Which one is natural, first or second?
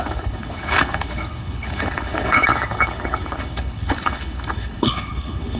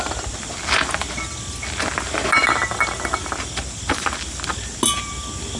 second